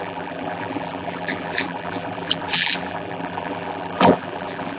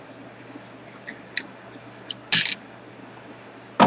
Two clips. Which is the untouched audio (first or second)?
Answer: second